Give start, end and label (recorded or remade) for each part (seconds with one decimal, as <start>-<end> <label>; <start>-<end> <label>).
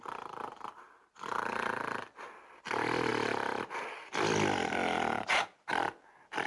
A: 0.0-6.5 recorded